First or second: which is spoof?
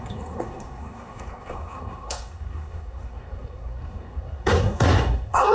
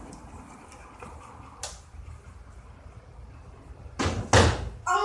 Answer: first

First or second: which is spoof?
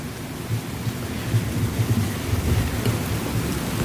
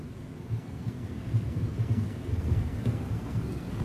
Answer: second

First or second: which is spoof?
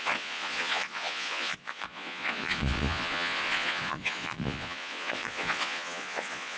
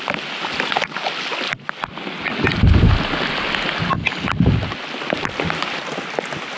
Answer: first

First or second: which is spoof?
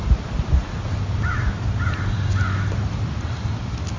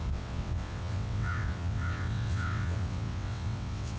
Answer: second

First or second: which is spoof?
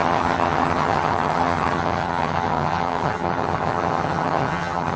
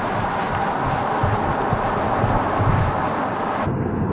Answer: first